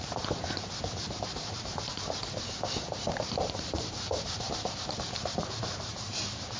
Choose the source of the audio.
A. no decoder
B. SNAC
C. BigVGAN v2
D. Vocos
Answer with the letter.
C